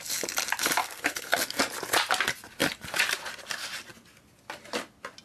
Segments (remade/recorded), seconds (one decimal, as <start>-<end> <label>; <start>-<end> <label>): 0.0-0.8 recorded; 0.8-1.4 remade; 1.4-5.2 recorded